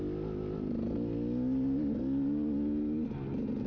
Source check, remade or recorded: recorded